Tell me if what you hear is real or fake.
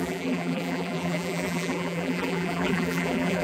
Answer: fake